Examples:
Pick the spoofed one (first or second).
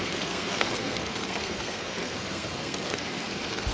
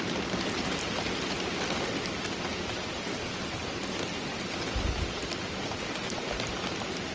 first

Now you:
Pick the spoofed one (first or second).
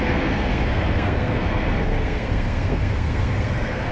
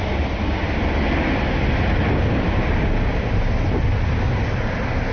first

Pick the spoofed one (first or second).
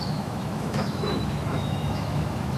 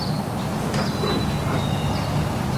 first